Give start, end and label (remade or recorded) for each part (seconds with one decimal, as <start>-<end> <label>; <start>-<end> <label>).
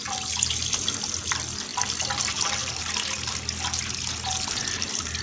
0.0-5.2 recorded